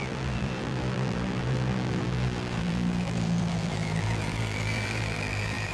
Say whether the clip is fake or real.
fake